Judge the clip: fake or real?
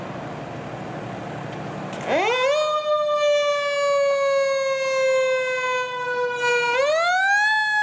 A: real